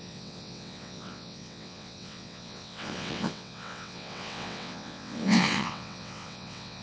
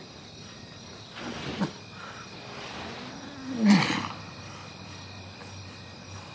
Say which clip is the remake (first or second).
first